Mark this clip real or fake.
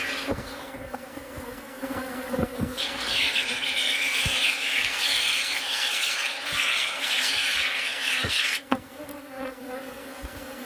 fake